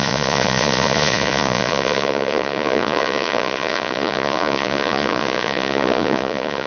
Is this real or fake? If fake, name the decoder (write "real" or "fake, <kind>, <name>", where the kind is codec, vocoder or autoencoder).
fake, vocoder, Vocos